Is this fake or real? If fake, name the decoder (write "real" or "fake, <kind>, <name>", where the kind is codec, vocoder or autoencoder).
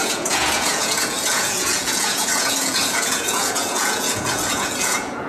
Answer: fake, vocoder, Vocos